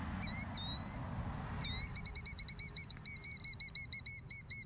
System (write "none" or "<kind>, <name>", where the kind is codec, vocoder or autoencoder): none